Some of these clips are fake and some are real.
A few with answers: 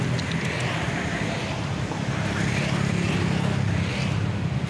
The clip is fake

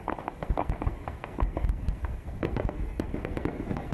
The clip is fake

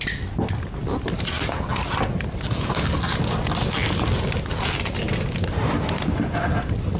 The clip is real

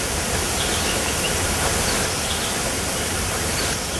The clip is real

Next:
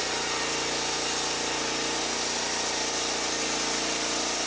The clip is real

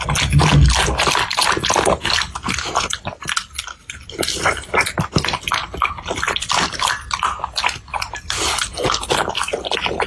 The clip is real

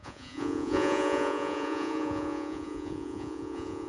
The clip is fake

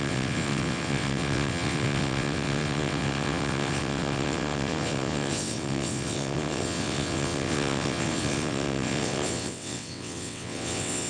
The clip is fake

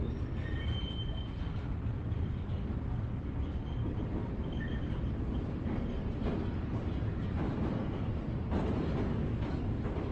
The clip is real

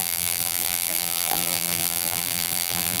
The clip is fake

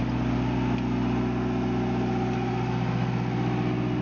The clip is real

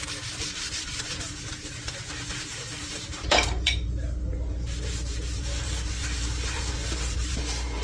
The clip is fake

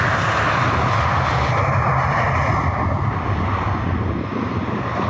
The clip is real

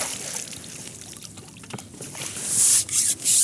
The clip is real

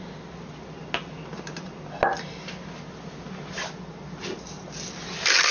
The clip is real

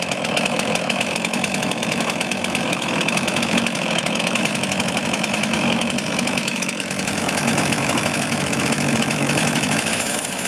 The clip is fake